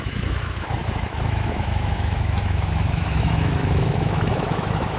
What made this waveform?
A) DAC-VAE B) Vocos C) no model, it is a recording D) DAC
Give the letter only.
A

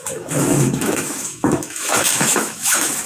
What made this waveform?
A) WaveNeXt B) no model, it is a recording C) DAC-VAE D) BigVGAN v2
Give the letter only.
C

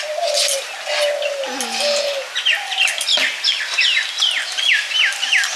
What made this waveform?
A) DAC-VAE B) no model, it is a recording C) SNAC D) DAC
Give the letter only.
B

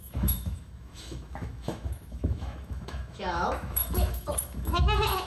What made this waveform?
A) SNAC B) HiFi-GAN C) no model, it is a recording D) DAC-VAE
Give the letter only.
D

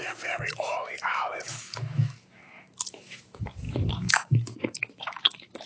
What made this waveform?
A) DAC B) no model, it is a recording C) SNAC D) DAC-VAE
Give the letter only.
D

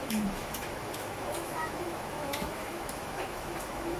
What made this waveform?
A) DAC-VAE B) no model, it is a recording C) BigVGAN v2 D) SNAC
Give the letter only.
A